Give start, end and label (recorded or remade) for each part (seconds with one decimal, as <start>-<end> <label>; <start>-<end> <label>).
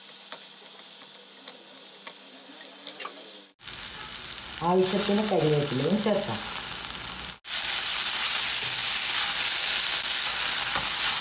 0.0-11.2 recorded